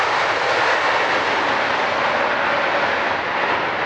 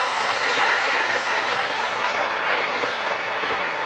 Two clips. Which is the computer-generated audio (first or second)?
second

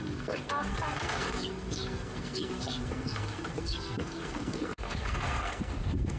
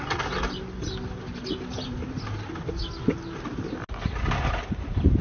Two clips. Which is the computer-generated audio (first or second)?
first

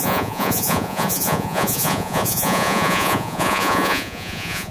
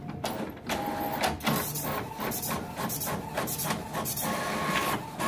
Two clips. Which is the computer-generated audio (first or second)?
first